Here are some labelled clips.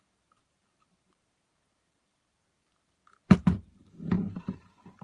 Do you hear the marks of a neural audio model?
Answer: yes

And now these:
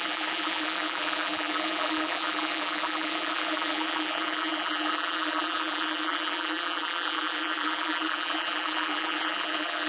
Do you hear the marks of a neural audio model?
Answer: yes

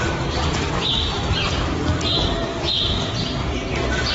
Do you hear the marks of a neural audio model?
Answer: no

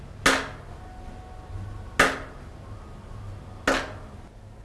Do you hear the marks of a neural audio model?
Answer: no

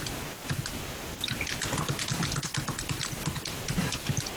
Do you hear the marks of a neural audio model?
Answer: no